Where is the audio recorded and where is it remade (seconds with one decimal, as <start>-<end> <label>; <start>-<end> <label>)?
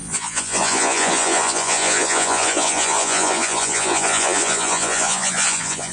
0.0-5.9 remade